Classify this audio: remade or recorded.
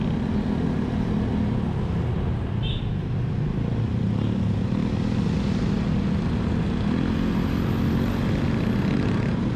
recorded